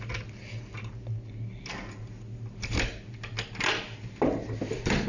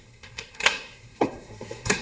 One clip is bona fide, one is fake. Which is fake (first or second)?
second